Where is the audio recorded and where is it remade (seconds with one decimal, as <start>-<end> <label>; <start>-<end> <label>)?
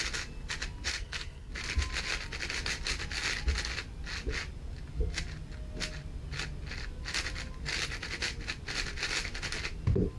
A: 0.0-0.9 recorded; 0.9-1.5 remade; 1.5-10.2 recorded